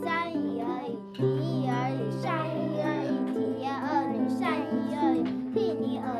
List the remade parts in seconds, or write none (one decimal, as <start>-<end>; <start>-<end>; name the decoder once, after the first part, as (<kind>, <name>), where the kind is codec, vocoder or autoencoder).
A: 2.4-3.1 (codec, SNAC)